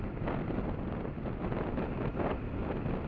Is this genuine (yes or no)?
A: yes